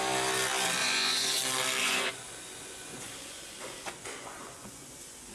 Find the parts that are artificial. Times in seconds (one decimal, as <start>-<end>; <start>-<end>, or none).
0.8-1.4; 1.8-5.3